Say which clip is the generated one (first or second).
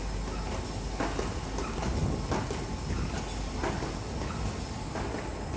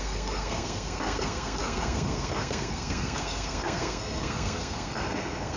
second